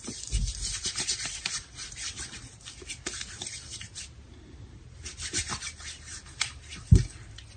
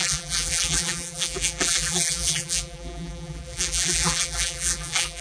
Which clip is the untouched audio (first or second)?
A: first